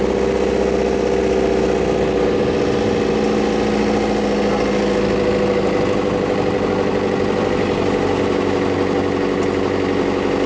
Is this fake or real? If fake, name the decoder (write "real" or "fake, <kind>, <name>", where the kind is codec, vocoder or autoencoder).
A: real